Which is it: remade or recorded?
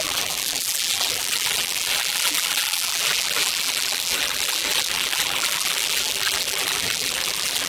remade